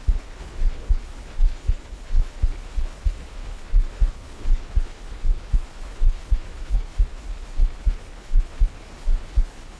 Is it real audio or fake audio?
fake